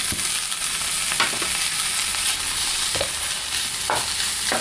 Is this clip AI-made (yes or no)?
no